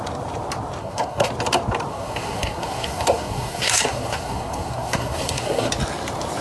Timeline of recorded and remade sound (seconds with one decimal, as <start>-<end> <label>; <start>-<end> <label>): 0.0-0.8 recorded; 0.8-1.3 remade; 1.3-1.9 recorded; 1.9-5.7 remade; 5.7-6.4 recorded